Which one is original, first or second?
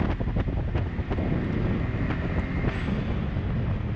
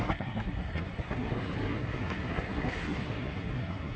first